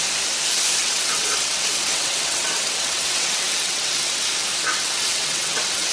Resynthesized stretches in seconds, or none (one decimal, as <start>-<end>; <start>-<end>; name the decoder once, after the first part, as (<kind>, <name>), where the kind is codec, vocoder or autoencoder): 0.8-4.3 (vocoder, WaveNeXt); 4.7-5.9